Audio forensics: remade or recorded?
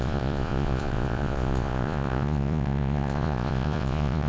remade